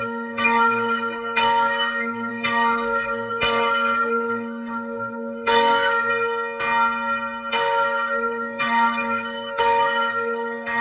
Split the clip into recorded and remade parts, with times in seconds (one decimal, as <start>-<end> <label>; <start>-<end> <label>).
0.0-6.1 remade; 6.1-7.5 recorded; 7.5-10.8 remade